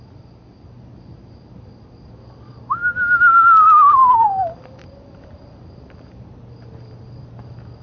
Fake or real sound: fake